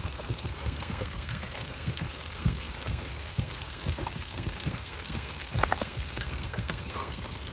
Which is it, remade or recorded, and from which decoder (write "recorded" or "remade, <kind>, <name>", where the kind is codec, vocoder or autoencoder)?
remade, codec, SNAC